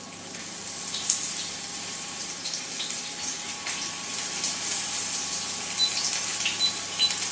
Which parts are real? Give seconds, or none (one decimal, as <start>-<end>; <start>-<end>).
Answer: 0.0-1.7; 5.2-6.3